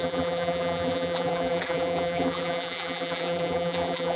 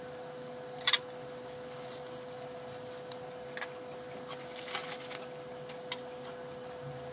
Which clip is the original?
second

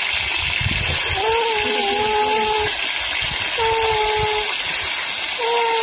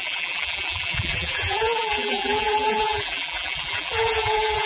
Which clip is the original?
first